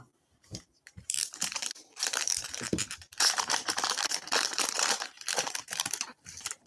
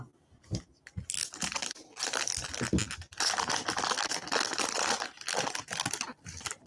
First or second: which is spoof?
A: first